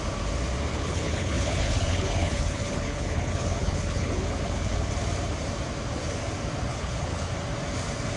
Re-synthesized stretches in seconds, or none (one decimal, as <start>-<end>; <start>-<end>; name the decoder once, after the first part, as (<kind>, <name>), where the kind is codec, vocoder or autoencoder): 0.7-4.9 (codec, HILCodec); 6.7-7.3